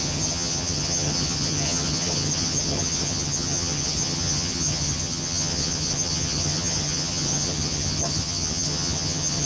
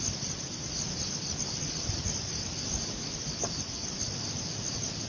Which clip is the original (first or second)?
second